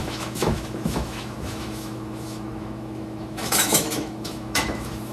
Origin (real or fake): fake